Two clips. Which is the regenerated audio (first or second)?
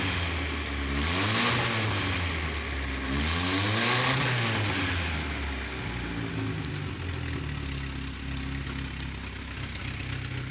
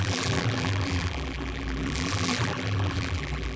second